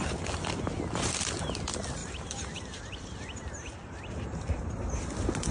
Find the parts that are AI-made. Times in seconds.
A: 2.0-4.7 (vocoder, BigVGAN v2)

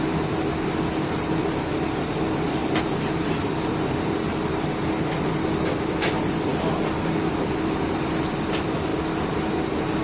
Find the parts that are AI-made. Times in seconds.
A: none

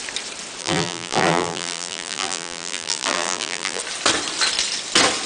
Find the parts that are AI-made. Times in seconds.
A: 0.6-3.8 (vocoder, BigVGAN v2)

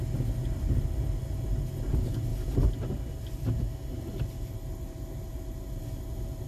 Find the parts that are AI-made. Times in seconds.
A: none

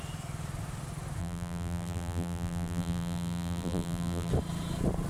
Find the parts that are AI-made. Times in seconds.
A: 1.2-4.3 (vocoder, BigVGAN v2)

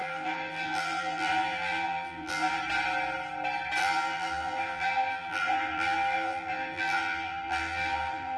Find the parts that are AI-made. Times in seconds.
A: 0.0-2.6 (vocoder, BigVGAN v2); 3.8-8.4

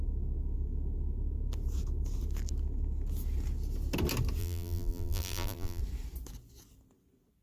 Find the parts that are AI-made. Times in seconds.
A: 4.4-5.8 (vocoder, BigVGAN v2)

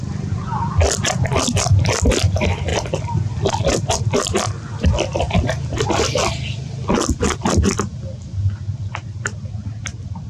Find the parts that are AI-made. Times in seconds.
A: 2.7-5.9 (vocoder, BigVGAN v2)